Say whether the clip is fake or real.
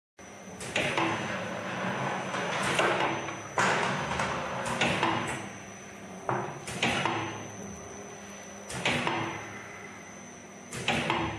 real